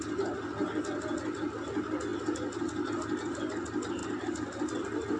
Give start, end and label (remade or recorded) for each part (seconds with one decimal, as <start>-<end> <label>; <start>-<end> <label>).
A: 0.0-5.2 recorded